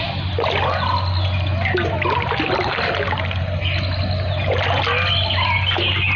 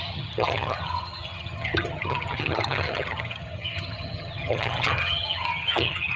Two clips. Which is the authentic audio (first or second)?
first